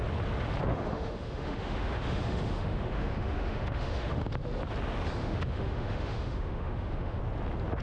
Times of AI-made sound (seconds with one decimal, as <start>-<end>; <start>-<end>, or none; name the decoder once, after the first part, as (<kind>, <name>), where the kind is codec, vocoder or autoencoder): 0.7-4.3 (autoencoder, DAC-VAE); 5.2-7.2